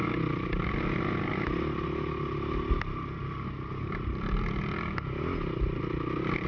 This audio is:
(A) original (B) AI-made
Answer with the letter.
A